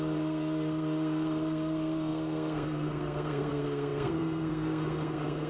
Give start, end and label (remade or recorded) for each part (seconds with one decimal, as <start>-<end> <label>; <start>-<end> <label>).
0.0-5.5 remade